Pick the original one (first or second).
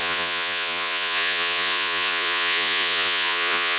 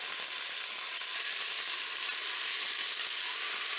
second